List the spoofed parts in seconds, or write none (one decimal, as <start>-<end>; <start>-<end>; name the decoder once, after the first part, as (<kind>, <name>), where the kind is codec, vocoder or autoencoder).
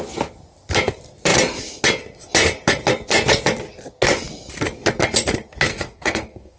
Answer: 5.7-6.6 (codec, SNAC)